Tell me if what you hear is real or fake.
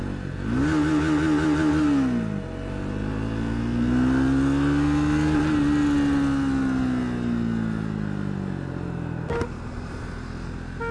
real